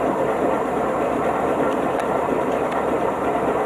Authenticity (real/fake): fake